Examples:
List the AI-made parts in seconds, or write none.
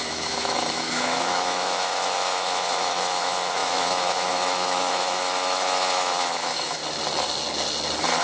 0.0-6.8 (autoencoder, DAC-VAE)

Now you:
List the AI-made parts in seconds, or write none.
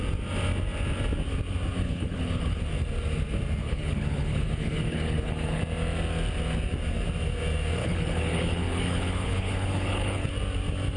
1.8-2.6 (codec, HILCodec); 3.6-5.6; 7.8-10.3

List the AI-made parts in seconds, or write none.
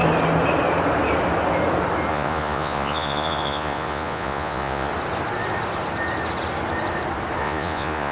2.1-4.9 (vocoder, Vocos); 7.4-8.1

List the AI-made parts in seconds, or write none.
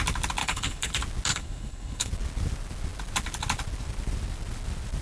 0.4-0.9 (codec, HILCodec); 1.3-2.1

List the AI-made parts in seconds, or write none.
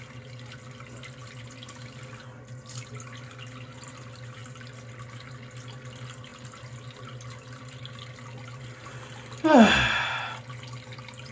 none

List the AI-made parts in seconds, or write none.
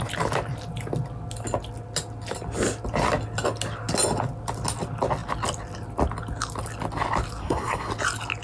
7.4-7.9 (codec, SNAC)